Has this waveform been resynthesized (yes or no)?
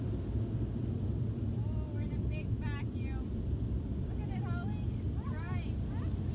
no